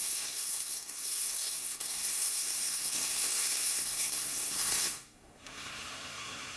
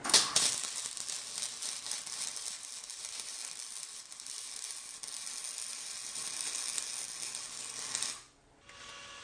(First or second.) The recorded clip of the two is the second